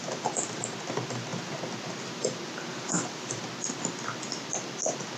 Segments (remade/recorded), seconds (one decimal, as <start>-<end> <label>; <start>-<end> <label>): 0.0-0.6 remade; 0.6-2.7 recorded; 2.7-3.4 remade; 3.4-5.2 recorded